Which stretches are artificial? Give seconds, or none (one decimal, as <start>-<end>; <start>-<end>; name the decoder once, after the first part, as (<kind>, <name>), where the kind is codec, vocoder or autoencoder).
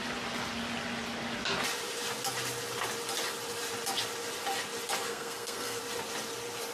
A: 5.1-5.8 (codec, SNAC)